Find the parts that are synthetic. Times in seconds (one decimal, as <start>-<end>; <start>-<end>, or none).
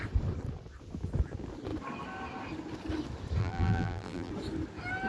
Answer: 3.4-4.3